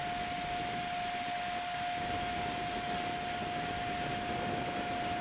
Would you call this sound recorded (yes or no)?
yes